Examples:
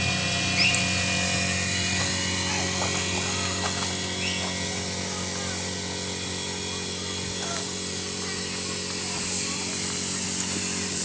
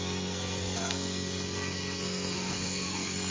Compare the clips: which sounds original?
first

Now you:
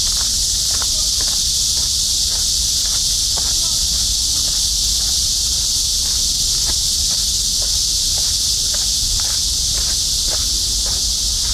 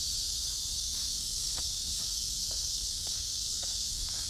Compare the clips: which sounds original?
first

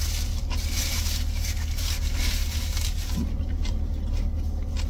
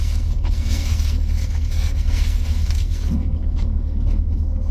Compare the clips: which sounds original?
first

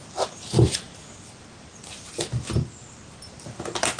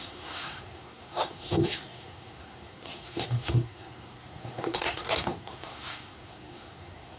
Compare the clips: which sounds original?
first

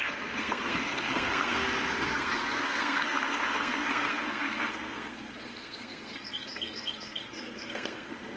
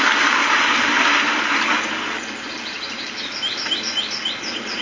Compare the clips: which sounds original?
second